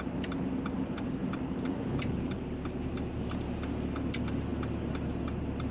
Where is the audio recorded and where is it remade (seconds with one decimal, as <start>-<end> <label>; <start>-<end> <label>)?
0.0-1.2 recorded; 1.2-3.7 remade; 3.7-5.7 recorded